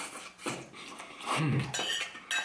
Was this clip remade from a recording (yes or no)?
no